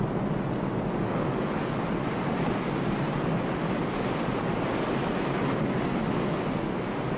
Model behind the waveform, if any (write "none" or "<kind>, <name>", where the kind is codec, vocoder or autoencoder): none